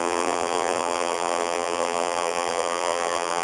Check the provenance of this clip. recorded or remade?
remade